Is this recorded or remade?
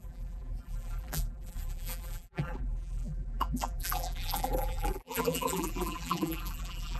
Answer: remade